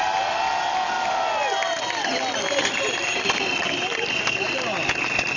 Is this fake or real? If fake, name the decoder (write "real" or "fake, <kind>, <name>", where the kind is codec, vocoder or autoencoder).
real